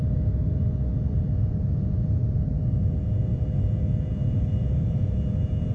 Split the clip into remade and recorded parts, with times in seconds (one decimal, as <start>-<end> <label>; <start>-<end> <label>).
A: 0.0-5.7 recorded